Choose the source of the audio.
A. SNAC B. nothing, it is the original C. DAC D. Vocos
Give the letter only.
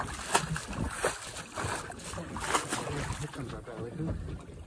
B